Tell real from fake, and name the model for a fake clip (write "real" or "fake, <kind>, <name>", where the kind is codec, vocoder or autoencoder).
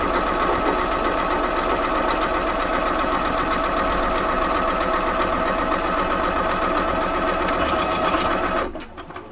real